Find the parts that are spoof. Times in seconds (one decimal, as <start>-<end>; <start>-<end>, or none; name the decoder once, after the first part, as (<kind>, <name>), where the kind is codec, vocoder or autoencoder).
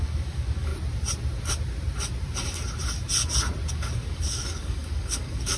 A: 0.0-0.7 (codec, DAC); 3.7-5.6